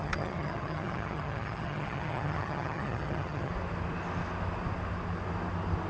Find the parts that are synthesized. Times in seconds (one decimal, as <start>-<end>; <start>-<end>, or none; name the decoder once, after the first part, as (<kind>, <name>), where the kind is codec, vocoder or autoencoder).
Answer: 0.0-3.5 (vocoder, HiFi-GAN)